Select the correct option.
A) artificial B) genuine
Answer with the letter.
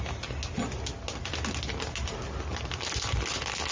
B